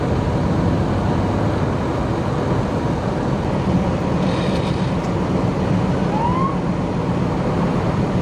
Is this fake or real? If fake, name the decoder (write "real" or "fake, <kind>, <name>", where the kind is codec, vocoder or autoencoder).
real